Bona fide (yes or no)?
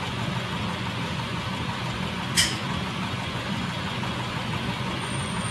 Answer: no